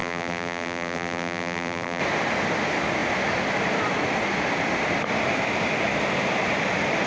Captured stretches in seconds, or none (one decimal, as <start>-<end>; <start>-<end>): 2.0-7.1